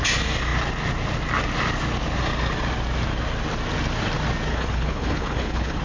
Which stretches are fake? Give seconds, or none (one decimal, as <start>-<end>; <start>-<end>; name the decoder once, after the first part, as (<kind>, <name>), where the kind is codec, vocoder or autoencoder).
4.5-5.8 (codec, HILCodec)

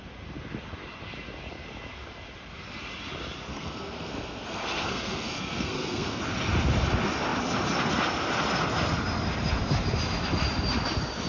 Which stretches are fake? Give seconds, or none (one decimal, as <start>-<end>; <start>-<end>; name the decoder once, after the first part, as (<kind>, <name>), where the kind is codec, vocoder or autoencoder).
3.5-6.2 (codec, SNAC)

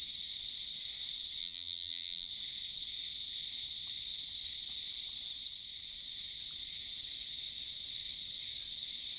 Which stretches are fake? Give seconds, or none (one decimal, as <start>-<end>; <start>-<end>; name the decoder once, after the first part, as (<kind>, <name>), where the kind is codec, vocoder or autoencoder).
1.4-2.3 (vocoder, BigVGAN v2)

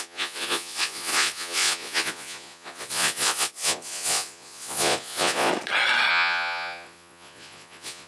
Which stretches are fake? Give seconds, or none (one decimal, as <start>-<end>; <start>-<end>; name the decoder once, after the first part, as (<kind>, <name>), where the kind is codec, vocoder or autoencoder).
0.0-5.5 (vocoder, Vocos); 6.1-8.1